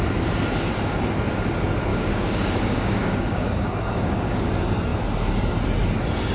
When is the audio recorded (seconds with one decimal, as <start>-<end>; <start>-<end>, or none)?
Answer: 0.0-1.9; 4.5-6.3